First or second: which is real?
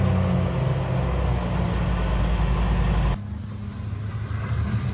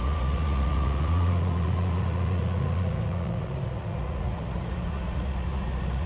first